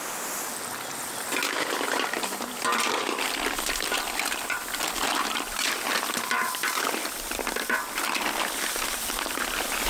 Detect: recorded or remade recorded